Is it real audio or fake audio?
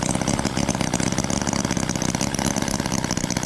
real